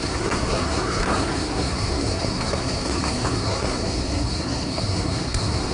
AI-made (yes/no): yes